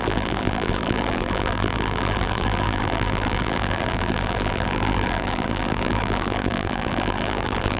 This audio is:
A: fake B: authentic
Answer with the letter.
A